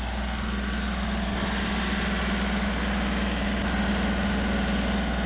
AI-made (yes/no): no